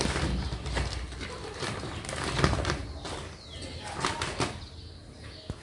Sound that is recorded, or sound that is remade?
recorded